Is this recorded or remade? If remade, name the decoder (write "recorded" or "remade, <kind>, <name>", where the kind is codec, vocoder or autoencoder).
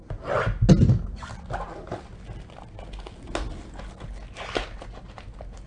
recorded